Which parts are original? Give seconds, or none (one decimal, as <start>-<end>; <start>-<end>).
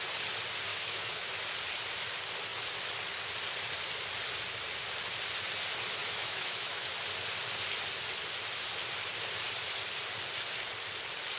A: 0.0-0.7; 1.3-6.0; 6.9-11.4